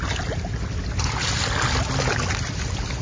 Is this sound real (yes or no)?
yes